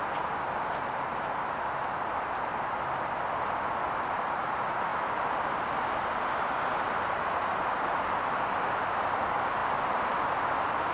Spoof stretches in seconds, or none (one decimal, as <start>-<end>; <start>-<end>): 6.7-7.6